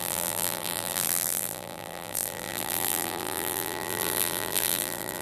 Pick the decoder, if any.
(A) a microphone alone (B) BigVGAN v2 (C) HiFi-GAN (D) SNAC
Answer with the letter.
B